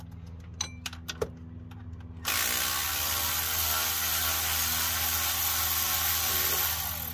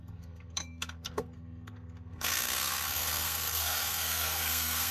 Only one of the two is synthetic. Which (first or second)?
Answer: second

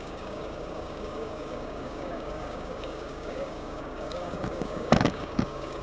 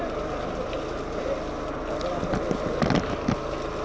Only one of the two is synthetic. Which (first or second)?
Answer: first